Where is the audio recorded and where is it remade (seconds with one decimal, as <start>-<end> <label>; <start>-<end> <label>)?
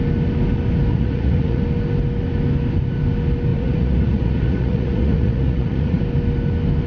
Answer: 0.0-0.9 recorded; 0.9-1.6 remade; 1.6-3.5 recorded; 3.5-6.0 remade; 6.0-6.9 recorded